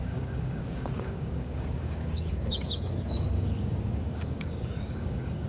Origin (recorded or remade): remade